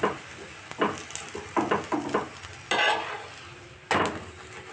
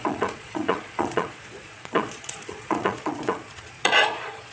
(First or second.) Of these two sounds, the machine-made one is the second